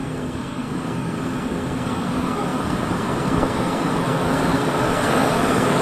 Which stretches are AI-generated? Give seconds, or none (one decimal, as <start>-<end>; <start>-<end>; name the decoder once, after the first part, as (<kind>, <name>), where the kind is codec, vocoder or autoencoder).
0.0-5.8 (codec, SNAC)